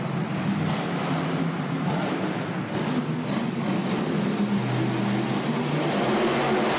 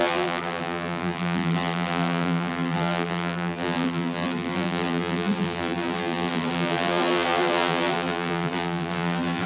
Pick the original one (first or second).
first